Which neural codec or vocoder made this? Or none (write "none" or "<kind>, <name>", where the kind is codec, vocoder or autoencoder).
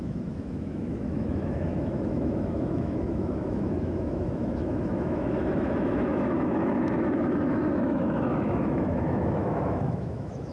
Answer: autoencoder, DAC-VAE